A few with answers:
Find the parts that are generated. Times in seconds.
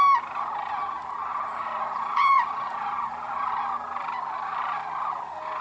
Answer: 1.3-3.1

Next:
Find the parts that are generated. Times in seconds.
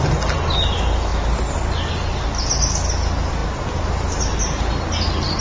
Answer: none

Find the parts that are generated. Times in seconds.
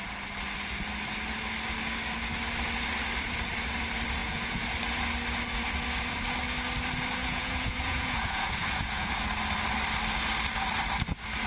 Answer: 4.2-4.7; 7.2-9.1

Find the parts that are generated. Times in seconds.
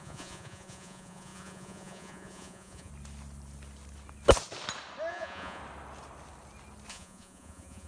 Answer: 0.0-2.9; 5.1-5.6; 6.9-7.9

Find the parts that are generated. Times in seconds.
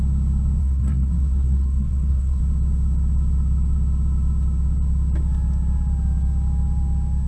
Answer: 0.6-2.4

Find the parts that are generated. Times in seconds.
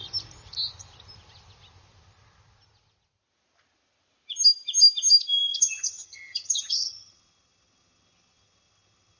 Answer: 5.5-9.2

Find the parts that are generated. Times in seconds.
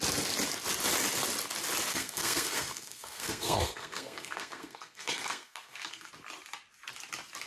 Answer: 1.9-6.1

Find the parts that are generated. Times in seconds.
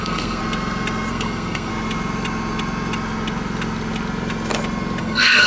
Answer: 0.0-0.4; 1.1-1.7; 5.0-5.5